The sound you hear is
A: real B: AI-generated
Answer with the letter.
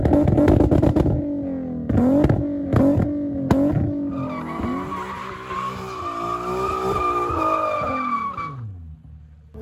A